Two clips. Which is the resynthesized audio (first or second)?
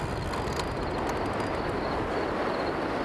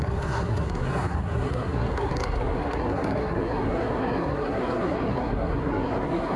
second